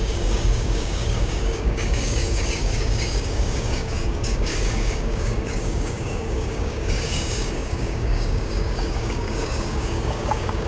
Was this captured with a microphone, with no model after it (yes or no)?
no